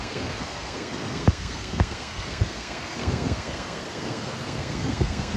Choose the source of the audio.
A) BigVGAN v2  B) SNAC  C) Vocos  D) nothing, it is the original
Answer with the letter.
B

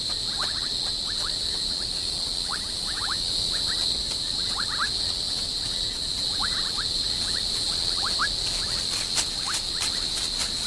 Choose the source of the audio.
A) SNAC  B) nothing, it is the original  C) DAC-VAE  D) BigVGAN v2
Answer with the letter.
B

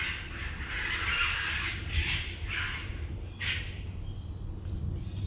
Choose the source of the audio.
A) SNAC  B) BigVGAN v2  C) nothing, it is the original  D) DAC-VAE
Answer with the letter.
C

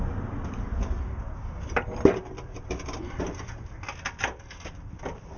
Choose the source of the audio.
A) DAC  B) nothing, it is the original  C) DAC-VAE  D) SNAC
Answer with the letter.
B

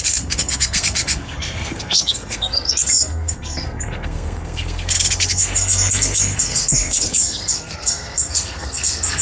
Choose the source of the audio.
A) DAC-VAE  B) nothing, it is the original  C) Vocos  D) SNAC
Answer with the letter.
D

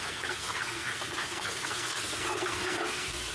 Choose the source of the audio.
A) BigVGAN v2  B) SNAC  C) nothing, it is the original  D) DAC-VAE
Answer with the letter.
B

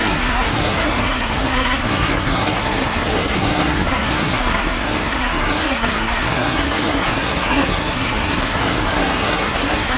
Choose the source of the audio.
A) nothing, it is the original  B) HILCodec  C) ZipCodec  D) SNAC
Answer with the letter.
D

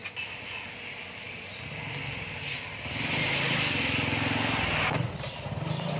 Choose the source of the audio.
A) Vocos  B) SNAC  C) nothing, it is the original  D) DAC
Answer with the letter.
C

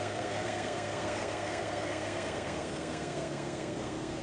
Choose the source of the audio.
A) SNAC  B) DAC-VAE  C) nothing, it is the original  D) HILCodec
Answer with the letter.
A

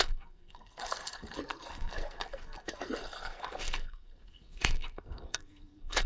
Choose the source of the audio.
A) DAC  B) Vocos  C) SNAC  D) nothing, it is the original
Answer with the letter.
C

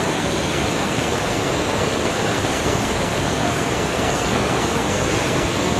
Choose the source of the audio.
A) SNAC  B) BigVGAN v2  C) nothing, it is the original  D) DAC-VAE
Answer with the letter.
A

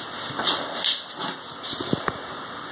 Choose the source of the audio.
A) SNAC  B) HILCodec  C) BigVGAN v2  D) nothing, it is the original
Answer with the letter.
D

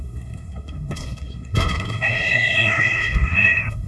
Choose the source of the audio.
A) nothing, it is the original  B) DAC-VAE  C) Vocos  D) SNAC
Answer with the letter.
D